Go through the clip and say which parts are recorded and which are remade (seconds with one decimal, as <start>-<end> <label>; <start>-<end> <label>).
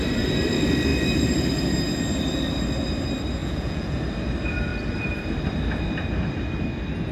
0.0-3.4 recorded; 3.4-4.0 remade; 4.0-7.1 recorded